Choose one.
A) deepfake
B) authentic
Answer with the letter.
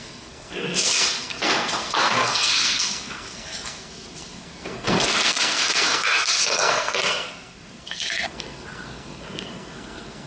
A